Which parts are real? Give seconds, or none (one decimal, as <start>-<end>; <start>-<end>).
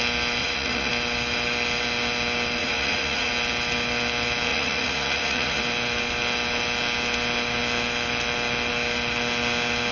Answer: 0.0-0.4; 0.9-2.6; 3.3-4.5; 5.6-9.9